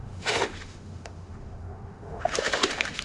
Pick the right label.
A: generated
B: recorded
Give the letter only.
A